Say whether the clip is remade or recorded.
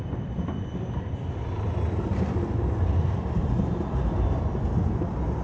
recorded